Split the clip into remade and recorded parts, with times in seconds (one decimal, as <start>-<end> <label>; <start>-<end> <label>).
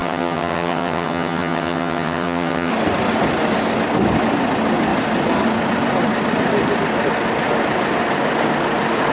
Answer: 0.0-2.7 remade; 2.7-9.1 recorded